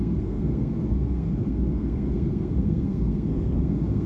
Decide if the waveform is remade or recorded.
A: remade